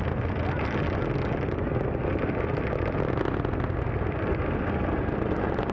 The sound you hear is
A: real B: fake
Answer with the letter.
A